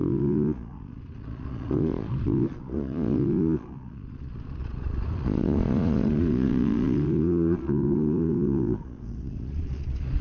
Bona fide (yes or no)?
no